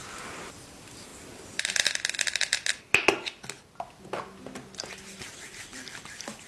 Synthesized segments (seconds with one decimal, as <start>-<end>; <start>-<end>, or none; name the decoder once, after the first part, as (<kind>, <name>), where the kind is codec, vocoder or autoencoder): 0.0-1.1 (vocoder, BigVGAN v2); 5.0-6.5